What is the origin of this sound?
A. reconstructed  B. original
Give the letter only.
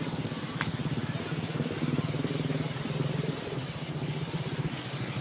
B